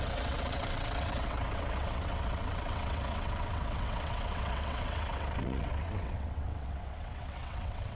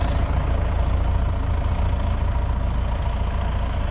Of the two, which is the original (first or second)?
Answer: second